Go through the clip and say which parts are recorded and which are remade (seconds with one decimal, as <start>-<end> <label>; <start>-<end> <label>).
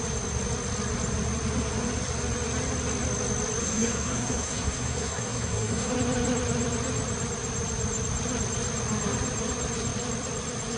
0.0-3.6 recorded; 3.6-5.9 remade; 5.9-10.8 recorded